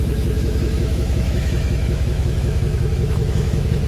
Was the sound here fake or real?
fake